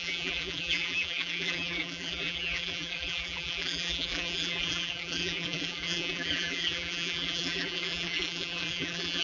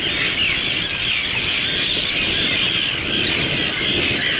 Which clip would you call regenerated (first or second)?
first